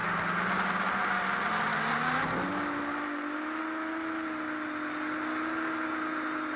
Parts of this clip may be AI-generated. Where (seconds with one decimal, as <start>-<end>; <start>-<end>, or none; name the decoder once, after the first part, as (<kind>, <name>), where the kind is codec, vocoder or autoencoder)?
none